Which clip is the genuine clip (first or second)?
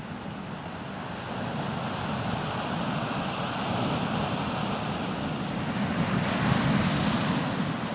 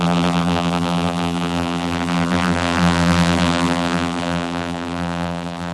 first